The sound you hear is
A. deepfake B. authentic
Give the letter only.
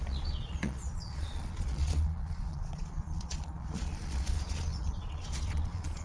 A